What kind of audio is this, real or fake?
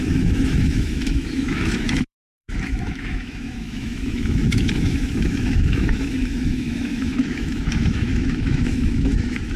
fake